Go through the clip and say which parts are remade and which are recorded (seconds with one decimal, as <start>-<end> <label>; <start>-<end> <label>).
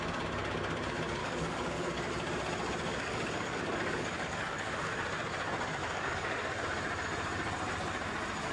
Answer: 0.0-1.2 recorded; 1.2-2.1 remade; 2.1-2.9 recorded; 2.9-4.9 remade; 4.9-5.8 recorded; 5.8-6.6 remade; 6.6-8.5 recorded